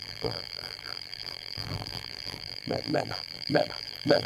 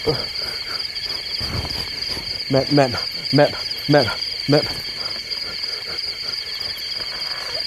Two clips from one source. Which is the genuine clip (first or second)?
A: second